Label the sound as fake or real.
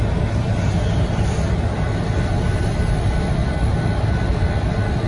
real